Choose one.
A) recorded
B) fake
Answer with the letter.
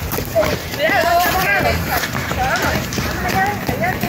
B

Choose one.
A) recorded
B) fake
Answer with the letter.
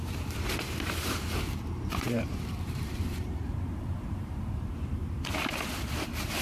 B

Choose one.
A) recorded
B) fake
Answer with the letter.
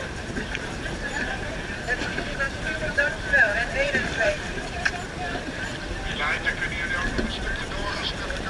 B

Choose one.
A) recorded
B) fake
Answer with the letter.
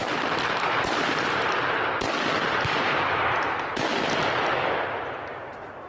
A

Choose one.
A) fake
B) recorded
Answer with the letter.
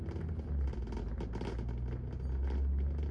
B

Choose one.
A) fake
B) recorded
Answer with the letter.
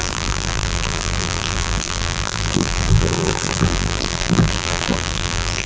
A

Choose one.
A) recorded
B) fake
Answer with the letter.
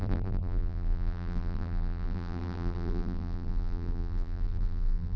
B